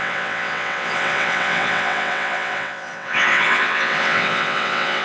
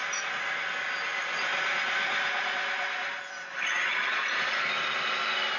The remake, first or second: first